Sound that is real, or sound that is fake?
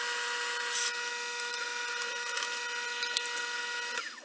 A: real